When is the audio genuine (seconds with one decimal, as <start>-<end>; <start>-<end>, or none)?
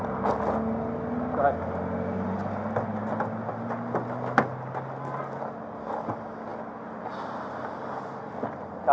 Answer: 0.0-8.9